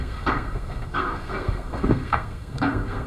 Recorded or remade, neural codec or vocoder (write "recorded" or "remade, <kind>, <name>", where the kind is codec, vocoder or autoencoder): remade, codec, SNAC